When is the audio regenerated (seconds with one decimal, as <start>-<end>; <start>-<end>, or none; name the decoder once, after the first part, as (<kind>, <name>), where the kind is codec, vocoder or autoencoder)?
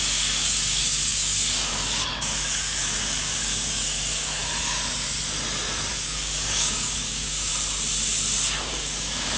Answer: 0.0-4.4 (codec, DAC); 5.9-7.5; 8.7-9.4